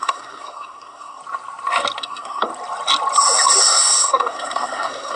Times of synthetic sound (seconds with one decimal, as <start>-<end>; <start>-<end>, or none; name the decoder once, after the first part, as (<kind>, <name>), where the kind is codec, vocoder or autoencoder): 0.0-1.2 (codec, SNAC); 2.0-2.5; 3.6-5.2